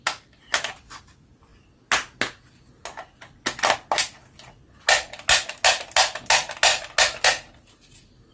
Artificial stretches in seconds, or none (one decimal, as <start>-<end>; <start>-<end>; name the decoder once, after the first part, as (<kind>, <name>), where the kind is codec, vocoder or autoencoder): none